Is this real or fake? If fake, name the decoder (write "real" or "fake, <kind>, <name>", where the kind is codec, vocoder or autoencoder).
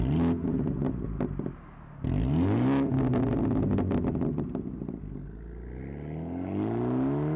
real